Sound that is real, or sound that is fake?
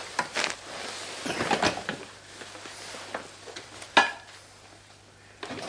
real